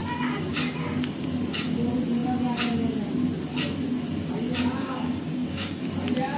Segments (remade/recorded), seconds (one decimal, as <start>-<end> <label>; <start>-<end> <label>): 0.0-4.8 recorded; 4.8-5.8 remade; 5.8-6.4 recorded